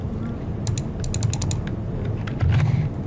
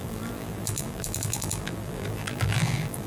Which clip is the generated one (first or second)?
second